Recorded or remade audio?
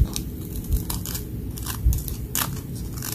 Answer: recorded